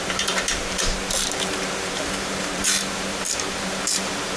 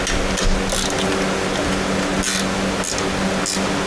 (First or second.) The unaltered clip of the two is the second